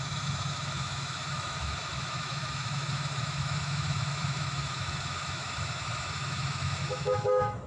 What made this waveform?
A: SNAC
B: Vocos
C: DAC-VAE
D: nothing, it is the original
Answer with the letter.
C